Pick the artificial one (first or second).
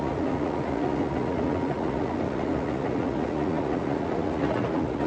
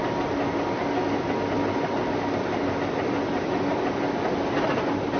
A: first